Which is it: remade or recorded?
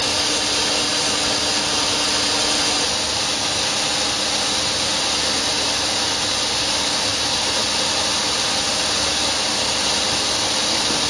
recorded